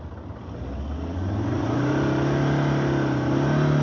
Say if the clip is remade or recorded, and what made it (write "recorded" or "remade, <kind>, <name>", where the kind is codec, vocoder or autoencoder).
recorded